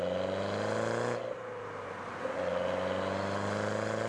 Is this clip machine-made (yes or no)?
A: no